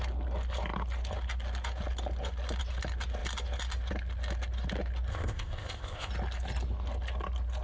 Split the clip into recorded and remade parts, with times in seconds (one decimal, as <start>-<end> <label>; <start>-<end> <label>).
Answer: 0.0-5.1 recorded; 5.1-6.1 remade; 6.1-7.6 recorded